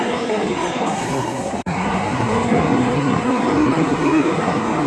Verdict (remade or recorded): remade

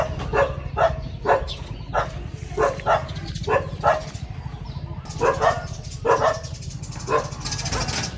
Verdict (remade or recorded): recorded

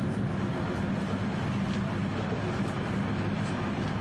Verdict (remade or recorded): recorded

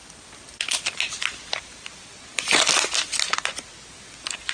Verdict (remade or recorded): recorded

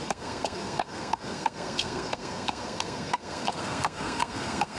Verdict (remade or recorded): remade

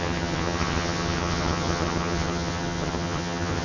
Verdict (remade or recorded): remade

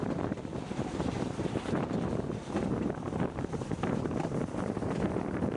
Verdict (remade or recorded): remade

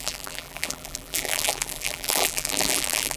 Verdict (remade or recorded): remade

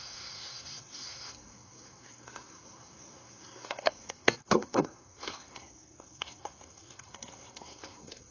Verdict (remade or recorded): remade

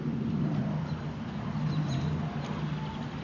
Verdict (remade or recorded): recorded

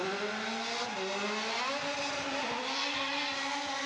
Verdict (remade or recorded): recorded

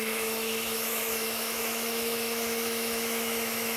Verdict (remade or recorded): remade